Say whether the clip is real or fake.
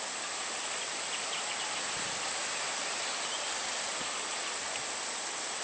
real